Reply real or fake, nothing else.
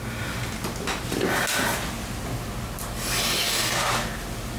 real